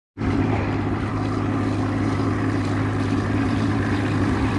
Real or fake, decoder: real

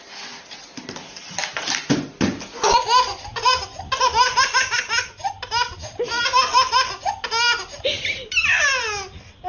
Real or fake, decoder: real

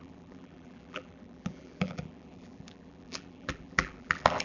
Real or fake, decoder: fake, vocoder, BigVGAN v2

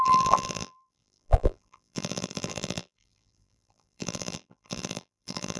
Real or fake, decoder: fake, vocoder, BigVGAN v2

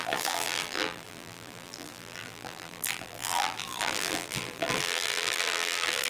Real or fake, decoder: fake, vocoder, BigVGAN v2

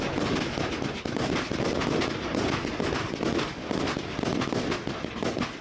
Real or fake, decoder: real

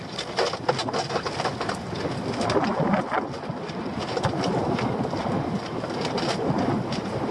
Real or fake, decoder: real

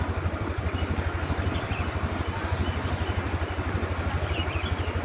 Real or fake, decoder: fake, vocoder, BigVGAN v2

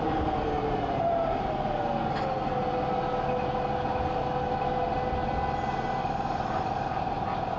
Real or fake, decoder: real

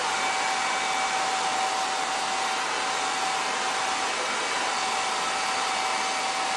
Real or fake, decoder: real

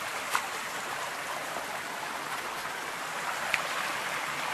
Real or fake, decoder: fake, vocoder, BigVGAN v2